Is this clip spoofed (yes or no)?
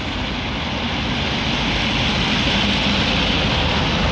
no